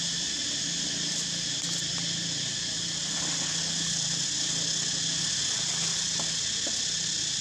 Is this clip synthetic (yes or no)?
no